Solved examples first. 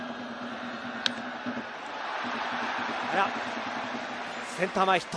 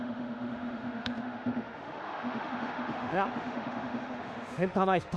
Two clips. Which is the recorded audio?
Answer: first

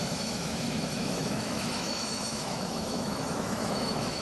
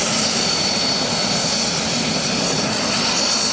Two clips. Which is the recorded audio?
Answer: second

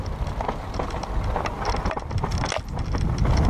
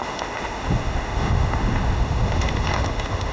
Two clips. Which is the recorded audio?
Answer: first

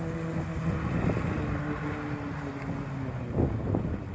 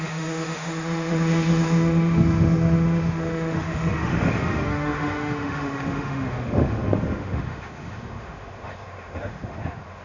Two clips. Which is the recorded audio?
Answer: first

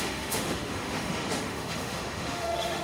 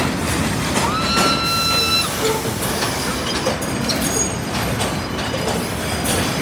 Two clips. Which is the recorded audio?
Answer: second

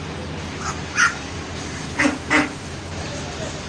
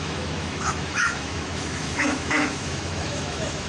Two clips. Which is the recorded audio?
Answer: first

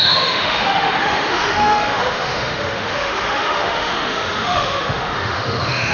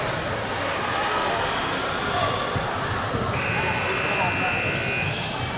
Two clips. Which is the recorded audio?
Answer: second